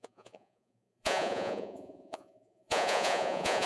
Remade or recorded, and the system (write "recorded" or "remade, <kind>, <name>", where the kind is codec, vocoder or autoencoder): remade, vocoder, Vocos